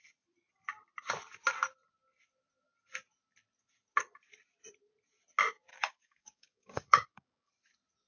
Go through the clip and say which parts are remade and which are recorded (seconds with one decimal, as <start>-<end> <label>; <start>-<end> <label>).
0.0-5.7 recorded; 5.7-7.5 remade; 7.5-8.1 recorded